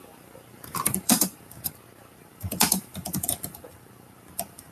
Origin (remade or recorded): remade